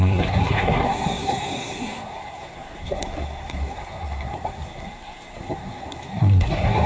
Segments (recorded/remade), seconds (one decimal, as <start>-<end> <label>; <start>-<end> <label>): 0.0-6.9 remade